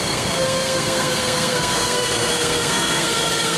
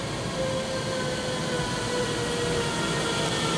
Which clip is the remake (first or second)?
first